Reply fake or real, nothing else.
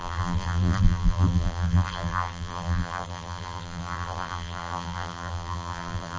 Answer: fake